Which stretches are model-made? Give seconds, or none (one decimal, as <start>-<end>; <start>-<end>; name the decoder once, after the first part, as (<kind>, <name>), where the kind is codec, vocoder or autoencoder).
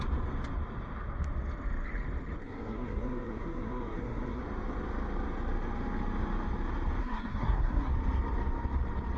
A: 2.4-4.4 (codec, SNAC); 7.0-7.9